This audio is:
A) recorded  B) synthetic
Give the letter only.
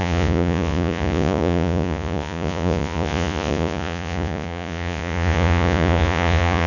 B